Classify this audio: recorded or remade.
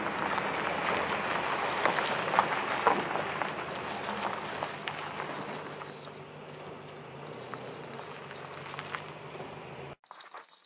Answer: recorded